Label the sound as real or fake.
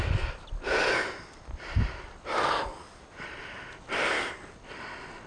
real